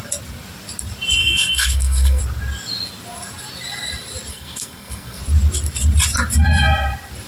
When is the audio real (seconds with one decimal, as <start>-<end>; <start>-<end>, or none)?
0.0-1.2; 2.2-4.3; 5.2-7.3